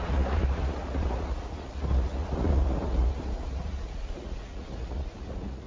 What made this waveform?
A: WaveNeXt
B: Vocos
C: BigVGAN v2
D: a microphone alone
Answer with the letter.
B